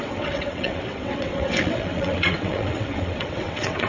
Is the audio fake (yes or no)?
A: yes